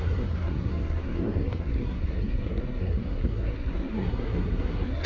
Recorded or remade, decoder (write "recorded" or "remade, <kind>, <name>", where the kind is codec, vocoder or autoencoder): remade, codec, SNAC